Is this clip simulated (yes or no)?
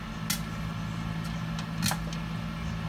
no